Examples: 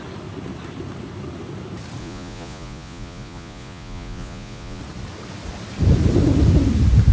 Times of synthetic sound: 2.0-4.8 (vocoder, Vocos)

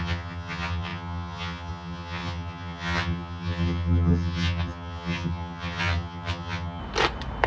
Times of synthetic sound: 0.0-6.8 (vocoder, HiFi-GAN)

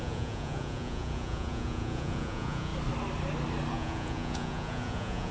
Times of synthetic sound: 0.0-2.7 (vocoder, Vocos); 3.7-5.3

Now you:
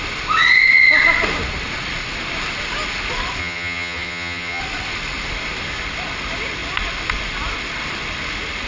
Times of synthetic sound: 3.4-4.6 (vocoder, HiFi-GAN)